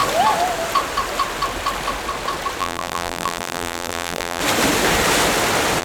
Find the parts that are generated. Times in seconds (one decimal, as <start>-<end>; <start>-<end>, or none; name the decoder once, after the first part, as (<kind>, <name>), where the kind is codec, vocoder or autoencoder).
2.6-4.4 (vocoder, BigVGAN v2)